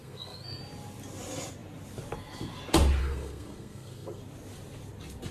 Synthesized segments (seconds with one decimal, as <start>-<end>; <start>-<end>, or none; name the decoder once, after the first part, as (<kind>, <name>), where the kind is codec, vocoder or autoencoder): 0.0-0.6 (codec, SNAC); 3.0-4.2